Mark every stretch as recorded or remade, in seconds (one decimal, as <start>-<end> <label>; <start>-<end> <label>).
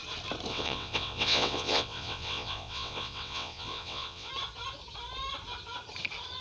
0.0-0.5 recorded; 0.5-4.3 remade; 4.3-6.4 recorded